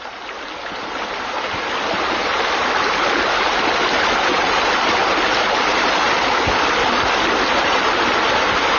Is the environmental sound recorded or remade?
recorded